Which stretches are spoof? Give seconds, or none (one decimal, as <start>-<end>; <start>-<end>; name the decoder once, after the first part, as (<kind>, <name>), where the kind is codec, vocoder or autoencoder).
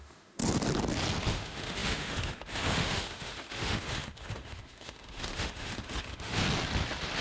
0.0-0.4 (autoencoder, DAC-VAE); 1.3-6.4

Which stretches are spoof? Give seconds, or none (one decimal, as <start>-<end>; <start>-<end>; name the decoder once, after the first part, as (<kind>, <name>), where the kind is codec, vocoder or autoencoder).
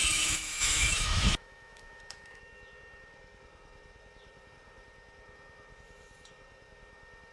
0.0-2.4 (autoencoder, DAC-VAE)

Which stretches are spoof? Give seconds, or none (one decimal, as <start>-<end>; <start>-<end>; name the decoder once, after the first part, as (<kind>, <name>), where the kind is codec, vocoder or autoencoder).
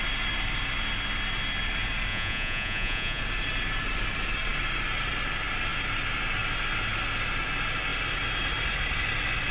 2.1-3.2 (vocoder, Vocos)